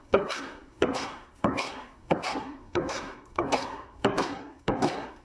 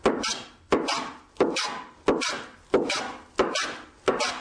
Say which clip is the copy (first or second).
first